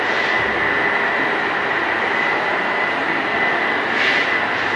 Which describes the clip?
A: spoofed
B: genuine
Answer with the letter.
B